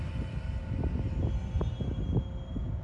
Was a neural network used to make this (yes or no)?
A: no